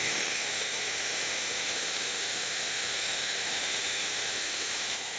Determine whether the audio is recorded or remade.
remade